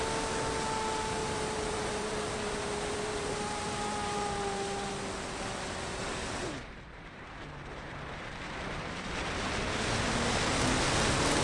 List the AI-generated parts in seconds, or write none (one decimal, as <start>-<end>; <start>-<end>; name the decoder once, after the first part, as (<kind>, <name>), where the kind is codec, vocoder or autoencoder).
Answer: 1.2-4.9 (vocoder, BigVGAN v2); 5.9-9.1